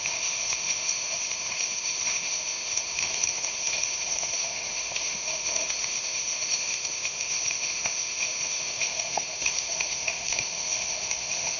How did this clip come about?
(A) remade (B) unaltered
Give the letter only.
A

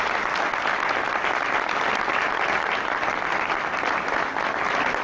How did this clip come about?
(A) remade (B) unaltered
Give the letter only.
B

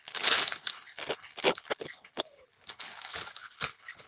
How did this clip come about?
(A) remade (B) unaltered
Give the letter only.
A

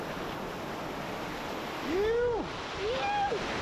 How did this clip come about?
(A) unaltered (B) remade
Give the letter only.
A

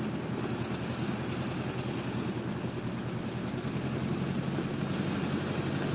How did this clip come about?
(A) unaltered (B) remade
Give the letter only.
A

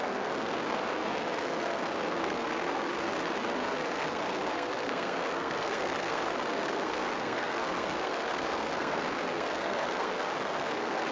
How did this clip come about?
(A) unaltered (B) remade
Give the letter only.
B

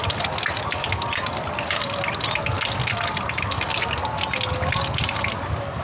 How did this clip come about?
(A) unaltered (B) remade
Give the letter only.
A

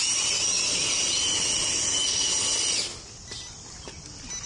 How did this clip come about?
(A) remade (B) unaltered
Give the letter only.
B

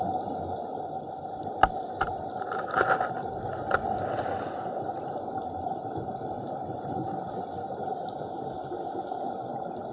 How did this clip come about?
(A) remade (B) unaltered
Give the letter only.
B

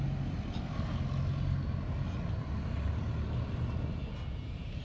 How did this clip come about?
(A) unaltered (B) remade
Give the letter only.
A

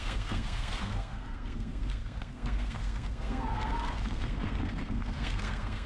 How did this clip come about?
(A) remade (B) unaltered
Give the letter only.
A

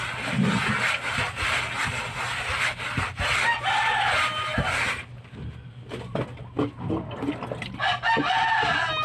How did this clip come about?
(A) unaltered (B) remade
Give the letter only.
A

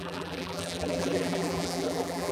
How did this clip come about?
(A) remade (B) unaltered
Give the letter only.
A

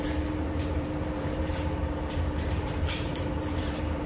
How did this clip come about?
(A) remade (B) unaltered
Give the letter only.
A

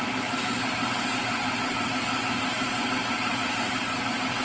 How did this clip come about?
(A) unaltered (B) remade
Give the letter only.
A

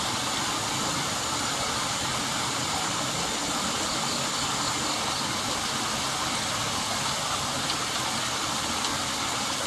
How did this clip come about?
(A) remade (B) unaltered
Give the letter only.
B